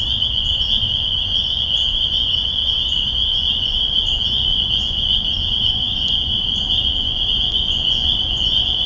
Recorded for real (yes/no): no